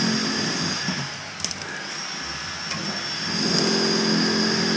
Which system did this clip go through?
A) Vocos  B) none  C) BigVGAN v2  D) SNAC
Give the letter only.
B